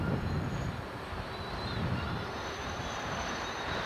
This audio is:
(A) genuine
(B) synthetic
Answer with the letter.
B